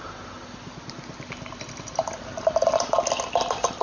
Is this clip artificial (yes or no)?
no